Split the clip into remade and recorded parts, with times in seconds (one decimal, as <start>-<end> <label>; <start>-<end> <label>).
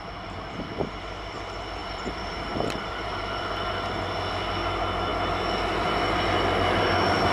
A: 0.0-1.8 recorded; 1.8-3.4 remade; 3.4-7.3 recorded